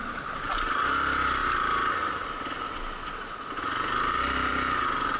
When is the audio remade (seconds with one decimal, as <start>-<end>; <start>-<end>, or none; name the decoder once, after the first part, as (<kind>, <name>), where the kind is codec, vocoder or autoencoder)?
none